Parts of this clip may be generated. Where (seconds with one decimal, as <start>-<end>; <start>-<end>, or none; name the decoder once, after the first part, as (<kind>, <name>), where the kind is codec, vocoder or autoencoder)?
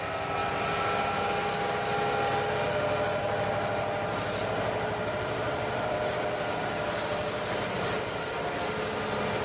3.2-7.8 (vocoder, BigVGAN v2)